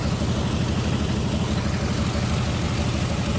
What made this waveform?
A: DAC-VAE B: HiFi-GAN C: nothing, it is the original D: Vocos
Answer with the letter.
C